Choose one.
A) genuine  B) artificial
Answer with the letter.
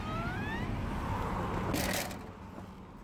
A